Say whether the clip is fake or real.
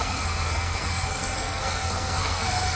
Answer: fake